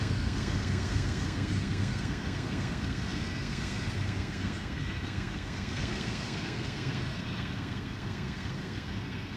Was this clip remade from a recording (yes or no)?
yes